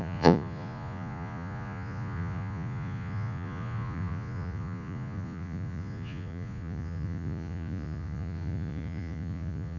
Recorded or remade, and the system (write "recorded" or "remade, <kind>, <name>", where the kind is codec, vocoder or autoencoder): remade, vocoder, Vocos